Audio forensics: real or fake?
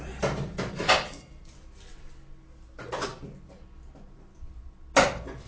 real